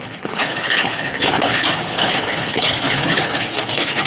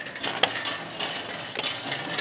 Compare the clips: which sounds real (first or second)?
second